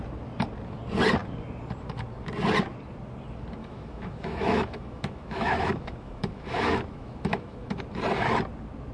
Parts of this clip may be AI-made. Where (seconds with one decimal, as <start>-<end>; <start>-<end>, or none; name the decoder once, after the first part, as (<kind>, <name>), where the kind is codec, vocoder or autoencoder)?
3.6-7.8 (autoencoder, DAC-VAE)